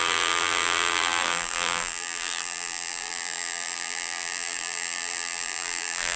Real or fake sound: fake